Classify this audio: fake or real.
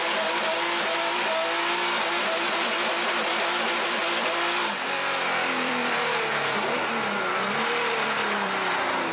fake